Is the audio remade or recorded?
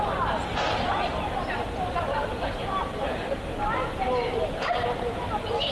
recorded